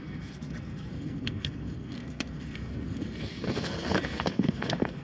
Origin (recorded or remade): remade